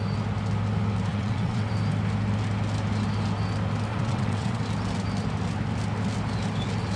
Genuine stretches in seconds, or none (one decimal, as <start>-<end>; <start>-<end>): 0.0-1.1; 1.7-3.9; 4.6-7.0